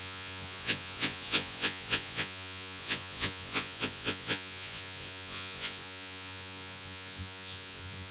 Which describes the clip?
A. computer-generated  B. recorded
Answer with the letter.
A